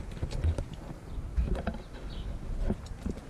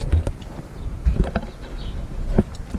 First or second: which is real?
first